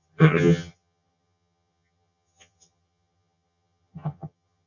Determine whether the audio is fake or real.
fake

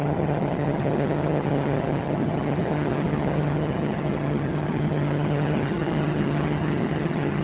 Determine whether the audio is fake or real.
fake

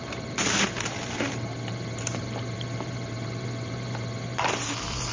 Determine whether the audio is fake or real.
fake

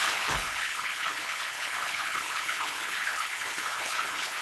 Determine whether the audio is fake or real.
fake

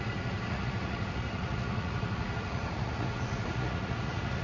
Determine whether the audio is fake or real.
fake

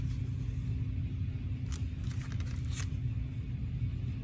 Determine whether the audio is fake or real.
real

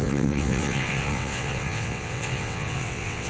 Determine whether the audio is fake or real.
fake